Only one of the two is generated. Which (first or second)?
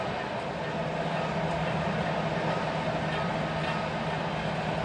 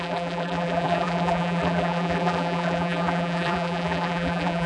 second